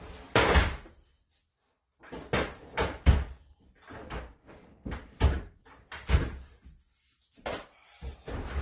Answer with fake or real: real